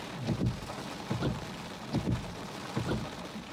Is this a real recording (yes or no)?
yes